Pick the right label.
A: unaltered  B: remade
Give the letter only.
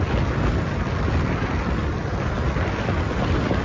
A